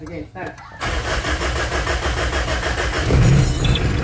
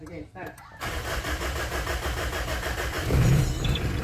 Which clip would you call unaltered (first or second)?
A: first